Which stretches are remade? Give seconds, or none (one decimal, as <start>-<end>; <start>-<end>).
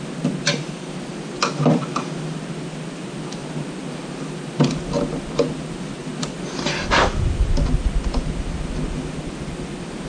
none